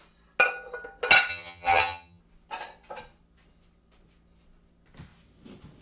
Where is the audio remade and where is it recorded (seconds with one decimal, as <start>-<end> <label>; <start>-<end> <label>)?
0.0-1.3 recorded; 1.3-2.2 remade; 2.2-5.8 recorded

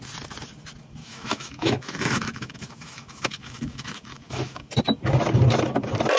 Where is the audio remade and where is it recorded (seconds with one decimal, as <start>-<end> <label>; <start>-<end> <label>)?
0.0-1.0 recorded; 1.0-4.7 remade; 4.7-6.2 recorded